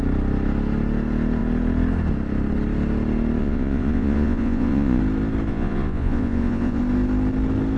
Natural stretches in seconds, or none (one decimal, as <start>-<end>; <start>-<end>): 0.0-3.4; 5.0-5.5; 6.8-7.8